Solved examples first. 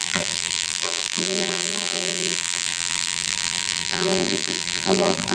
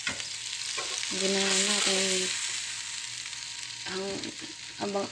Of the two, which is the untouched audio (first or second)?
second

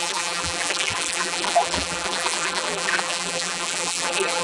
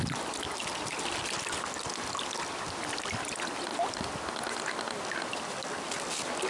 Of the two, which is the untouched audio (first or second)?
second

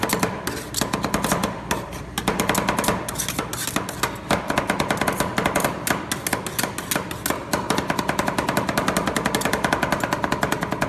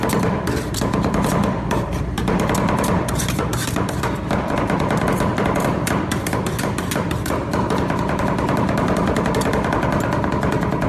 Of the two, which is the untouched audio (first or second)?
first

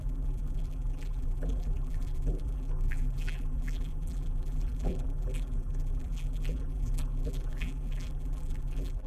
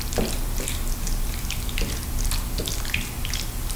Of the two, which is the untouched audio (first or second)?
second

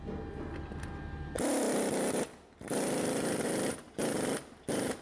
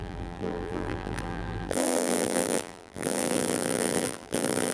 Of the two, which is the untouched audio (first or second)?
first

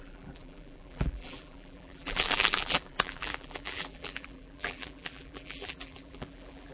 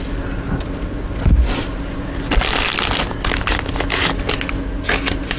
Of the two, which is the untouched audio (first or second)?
second